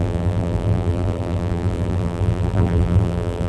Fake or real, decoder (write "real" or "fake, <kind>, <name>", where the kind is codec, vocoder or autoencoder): fake, vocoder, BigVGAN v2